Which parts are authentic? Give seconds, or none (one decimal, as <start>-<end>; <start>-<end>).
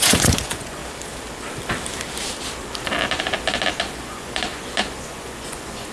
0.8-3.8